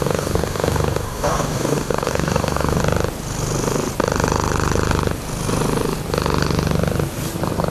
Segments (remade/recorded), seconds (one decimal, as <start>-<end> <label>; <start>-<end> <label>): 0.0-2.8 remade; 2.8-7.7 recorded